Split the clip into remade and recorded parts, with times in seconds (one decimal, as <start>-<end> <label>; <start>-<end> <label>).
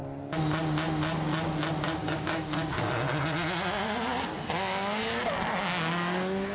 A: 0.0-2.0 recorded; 2.0-2.9 remade; 2.9-6.5 recorded